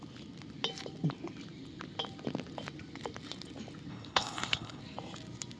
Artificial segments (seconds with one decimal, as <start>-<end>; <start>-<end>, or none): 3.9-4.8